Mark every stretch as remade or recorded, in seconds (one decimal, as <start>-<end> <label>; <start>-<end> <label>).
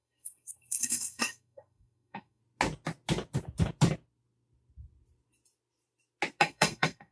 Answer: 0.0-2.4 remade; 2.4-6.4 recorded; 6.4-7.1 remade